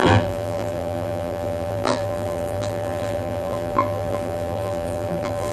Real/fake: fake